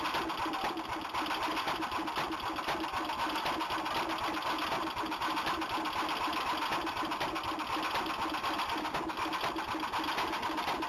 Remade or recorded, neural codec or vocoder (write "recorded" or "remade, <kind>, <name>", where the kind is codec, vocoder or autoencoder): recorded